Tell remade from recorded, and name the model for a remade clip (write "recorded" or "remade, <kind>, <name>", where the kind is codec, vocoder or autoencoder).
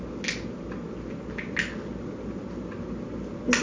recorded